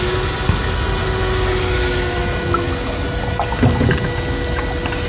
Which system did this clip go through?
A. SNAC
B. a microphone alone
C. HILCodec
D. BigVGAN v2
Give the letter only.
B